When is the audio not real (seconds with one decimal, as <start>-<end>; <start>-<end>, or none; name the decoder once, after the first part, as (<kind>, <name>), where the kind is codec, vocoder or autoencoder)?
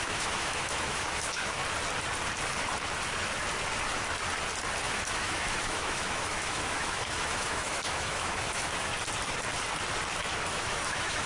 0.0-1.6 (autoencoder, DAC-VAE); 4.9-8.9; 10.5-11.3